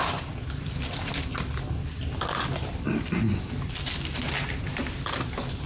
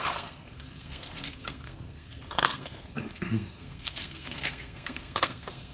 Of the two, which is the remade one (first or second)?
second